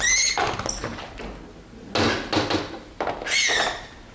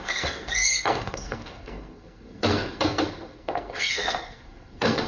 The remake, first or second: second